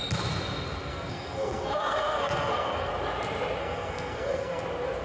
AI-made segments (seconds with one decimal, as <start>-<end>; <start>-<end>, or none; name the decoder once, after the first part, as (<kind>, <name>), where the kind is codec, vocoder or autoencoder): 0.9-2.9 (codec, SNAC); 3.6-4.6

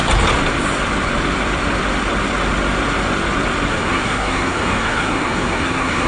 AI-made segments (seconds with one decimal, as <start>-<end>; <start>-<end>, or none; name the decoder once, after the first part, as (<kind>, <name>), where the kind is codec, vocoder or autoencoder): 3.7-6.1 (codec, SNAC)

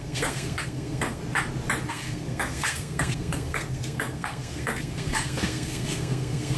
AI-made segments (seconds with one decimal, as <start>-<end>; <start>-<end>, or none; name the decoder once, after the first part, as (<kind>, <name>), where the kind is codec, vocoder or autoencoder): 0.0-1.2 (codec, SNAC); 1.9-6.6